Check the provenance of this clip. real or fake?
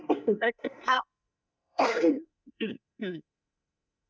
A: fake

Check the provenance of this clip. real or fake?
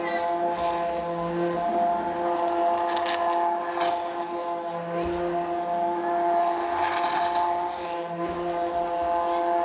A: real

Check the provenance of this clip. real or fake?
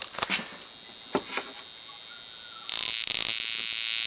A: real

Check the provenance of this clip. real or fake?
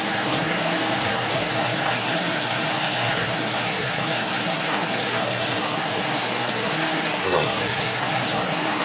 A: fake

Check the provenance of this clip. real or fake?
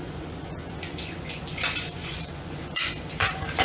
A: fake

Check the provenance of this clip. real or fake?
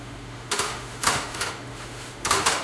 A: fake